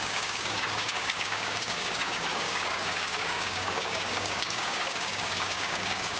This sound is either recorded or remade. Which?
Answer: remade